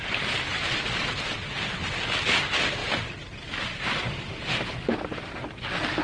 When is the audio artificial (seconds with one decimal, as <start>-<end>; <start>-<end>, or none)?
none